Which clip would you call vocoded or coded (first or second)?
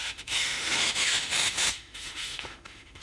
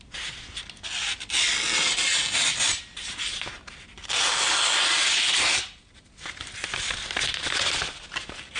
first